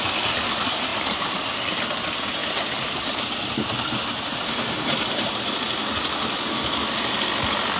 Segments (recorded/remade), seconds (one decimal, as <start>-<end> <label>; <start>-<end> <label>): 0.0-0.9 recorded; 0.9-1.6 remade; 1.6-2.4 recorded; 2.4-5.6 remade; 5.6-7.8 recorded